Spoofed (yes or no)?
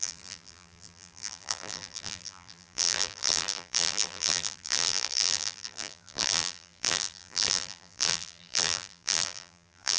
yes